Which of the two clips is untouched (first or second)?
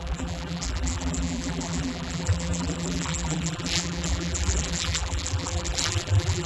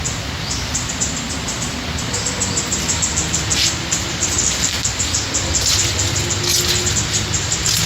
second